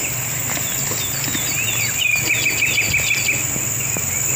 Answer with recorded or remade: recorded